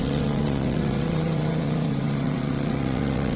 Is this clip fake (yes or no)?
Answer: yes